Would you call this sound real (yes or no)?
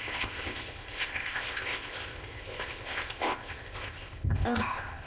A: no